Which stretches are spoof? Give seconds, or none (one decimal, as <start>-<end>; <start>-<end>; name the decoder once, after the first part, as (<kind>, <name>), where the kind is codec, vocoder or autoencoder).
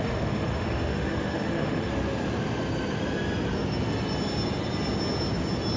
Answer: 0.0-1.9 (autoencoder, DAC-VAE)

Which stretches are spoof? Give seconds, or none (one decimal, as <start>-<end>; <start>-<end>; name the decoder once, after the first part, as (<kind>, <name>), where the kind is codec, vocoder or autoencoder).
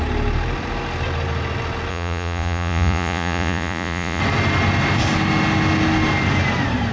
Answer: 1.9-4.2 (vocoder, Vocos)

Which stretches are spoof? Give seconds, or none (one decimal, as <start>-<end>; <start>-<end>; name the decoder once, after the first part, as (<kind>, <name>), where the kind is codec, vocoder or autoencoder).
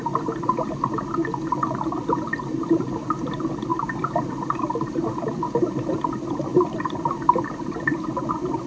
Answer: 0.0-3.7 (vocoder, BigVGAN v2); 4.3-8.7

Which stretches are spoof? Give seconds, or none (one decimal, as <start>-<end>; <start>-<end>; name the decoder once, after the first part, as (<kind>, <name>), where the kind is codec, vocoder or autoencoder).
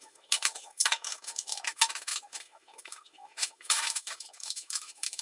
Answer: 0.0-5.2 (autoencoder, DAC-VAE)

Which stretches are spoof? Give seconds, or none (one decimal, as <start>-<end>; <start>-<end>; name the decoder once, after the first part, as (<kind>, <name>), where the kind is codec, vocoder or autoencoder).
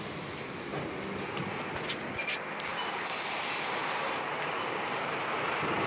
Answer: none